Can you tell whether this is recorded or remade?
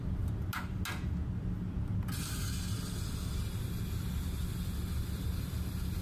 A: recorded